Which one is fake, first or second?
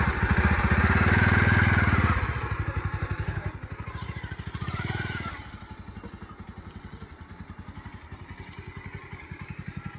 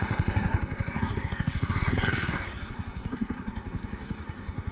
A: second